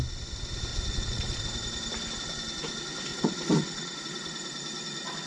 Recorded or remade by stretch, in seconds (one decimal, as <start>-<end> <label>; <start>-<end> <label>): 0.0-0.7 recorded; 0.7-1.4 remade; 1.4-3.1 recorded; 3.1-4.0 remade; 4.0-5.3 recorded